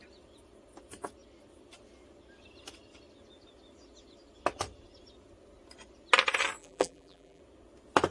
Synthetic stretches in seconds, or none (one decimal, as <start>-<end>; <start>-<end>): 6.6-7.4